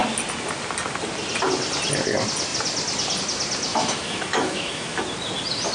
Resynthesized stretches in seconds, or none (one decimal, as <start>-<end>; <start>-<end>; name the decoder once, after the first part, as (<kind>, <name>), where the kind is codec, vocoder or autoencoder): 3.7-5.0 (autoencoder, DAC-VAE)